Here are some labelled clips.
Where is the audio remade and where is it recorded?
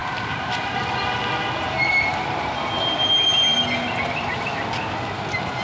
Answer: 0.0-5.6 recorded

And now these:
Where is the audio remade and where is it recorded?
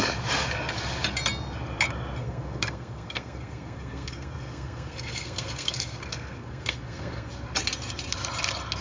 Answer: 0.0-2.2 recorded; 2.2-7.3 remade; 7.3-8.8 recorded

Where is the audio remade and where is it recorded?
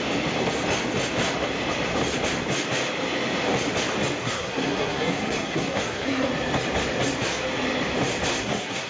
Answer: 0.0-4.2 recorded; 4.2-6.3 remade; 6.3-8.3 recorded; 8.3-8.9 remade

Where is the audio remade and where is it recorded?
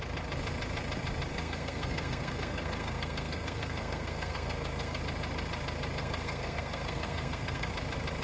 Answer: 0.0-1.3 recorded; 1.3-5.0 remade; 5.0-6.0 recorded; 6.0-7.7 remade; 7.7-8.2 recorded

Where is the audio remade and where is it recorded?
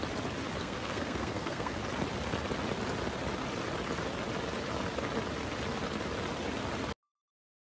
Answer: 0.0-0.6 recorded; 0.6-1.8 remade; 1.8-7.7 recorded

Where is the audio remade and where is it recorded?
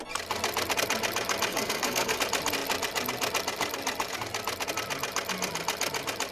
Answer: 0.0-1.5 recorded; 1.5-2.2 remade; 2.2-6.3 recorded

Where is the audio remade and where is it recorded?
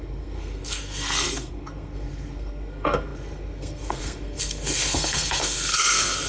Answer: 0.0-6.3 remade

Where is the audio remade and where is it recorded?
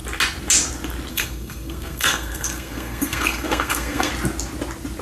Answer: 0.0-1.1 recorded; 1.1-4.1 remade; 4.1-5.0 recorded